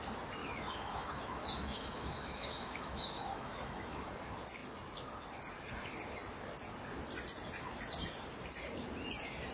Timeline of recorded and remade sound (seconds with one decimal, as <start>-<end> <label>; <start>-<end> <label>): 0.0-0.4 recorded; 0.4-4.1 remade; 4.1-9.5 recorded